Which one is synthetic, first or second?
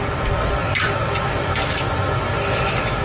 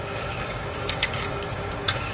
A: second